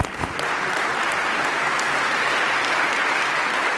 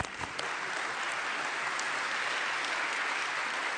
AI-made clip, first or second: second